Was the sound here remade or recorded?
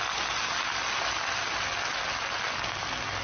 recorded